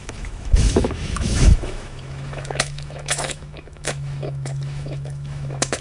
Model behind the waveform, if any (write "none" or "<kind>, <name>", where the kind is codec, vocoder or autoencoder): autoencoder, DAC-VAE